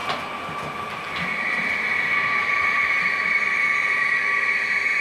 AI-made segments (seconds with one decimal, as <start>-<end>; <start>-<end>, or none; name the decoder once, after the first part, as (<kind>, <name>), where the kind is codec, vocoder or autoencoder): 2.4-4.1 (vocoder, BigVGAN v2)

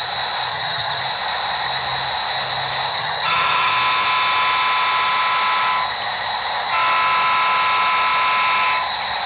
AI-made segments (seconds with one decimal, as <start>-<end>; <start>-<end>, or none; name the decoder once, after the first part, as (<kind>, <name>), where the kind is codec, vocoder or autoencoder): 0.5-1.0 (vocoder, HiFi-GAN); 2.9-3.7

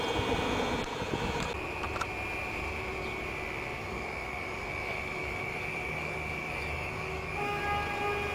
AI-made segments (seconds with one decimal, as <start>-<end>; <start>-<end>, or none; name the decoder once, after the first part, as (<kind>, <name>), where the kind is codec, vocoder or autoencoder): 3.8-7.6 (codec, DAC)

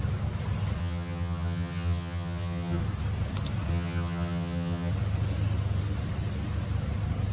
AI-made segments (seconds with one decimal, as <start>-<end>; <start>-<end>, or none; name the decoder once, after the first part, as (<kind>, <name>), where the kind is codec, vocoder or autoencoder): 0.8-2.8 (vocoder, HiFi-GAN); 3.7-4.9